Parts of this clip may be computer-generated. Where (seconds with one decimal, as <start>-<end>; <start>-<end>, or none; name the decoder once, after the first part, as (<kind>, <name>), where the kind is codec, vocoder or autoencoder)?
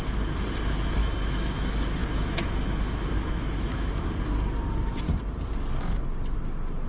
1.0-1.6 (autoencoder, DAC-VAE); 2.0-3.9